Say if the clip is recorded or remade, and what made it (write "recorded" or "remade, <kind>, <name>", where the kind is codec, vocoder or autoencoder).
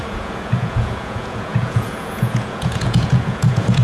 remade, vocoder, Vocos